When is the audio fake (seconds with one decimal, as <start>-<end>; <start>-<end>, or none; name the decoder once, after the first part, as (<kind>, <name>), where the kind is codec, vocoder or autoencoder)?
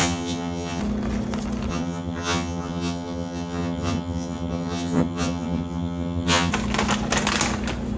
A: 0.0-0.8 (vocoder, HiFi-GAN); 1.7-6.5